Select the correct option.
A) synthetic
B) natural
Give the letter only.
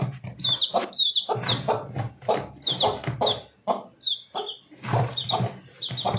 B